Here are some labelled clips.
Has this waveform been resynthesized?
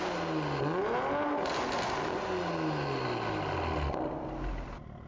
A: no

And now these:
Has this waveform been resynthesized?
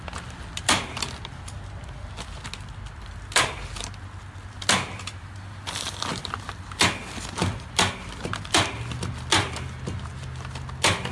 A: no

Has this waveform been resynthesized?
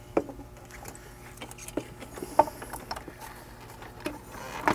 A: no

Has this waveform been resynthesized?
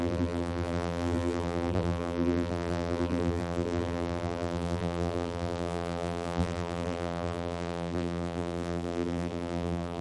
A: yes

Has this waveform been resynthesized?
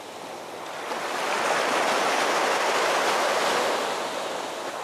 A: no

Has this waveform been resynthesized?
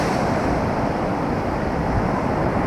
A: yes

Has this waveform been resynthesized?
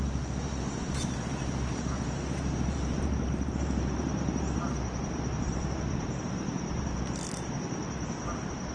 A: yes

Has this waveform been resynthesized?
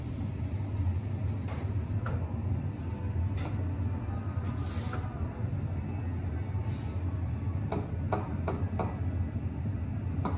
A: no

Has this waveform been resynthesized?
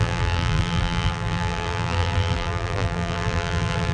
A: yes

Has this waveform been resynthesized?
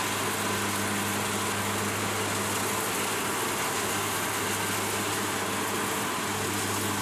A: no